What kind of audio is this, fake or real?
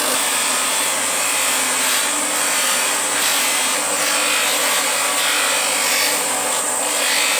real